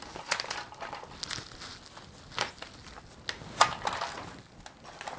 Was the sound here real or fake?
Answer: real